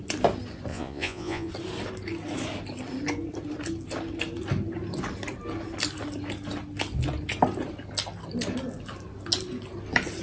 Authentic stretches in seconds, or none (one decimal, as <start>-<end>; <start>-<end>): 0.0-0.7; 1.5-10.2